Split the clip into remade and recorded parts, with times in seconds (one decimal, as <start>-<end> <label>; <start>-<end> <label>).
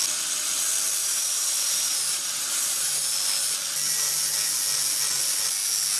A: 0.0-1.0 recorded; 1.0-3.0 remade; 3.0-6.0 recorded